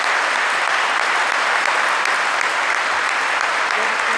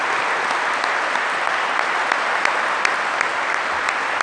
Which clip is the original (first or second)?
second